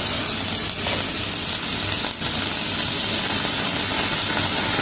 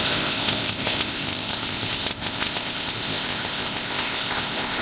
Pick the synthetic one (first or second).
second